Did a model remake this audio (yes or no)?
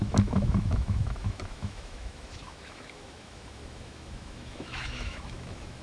yes